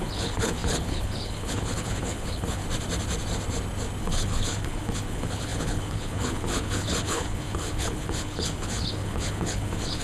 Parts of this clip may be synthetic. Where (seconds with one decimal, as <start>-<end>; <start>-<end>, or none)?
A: 0.0-2.6; 4.0-10.0